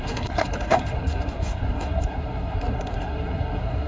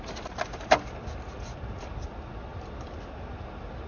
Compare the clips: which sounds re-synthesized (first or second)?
first